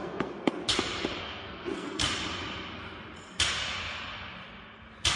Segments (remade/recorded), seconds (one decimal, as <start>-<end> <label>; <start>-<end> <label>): 0.0-0.6 remade; 0.6-1.2 recorded; 1.2-2.0 remade; 2.0-5.2 recorded